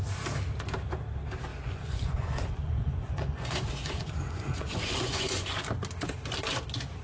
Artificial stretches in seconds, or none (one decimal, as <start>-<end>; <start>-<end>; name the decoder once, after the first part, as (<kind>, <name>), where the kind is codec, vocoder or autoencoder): 1.5-5.6 (vocoder, Vocos)